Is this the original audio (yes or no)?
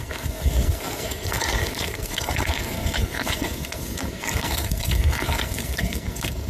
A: no